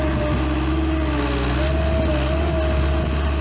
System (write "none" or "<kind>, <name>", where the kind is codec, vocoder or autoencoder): none